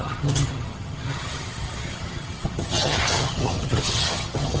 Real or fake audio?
fake